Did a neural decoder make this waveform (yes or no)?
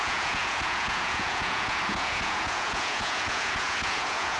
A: yes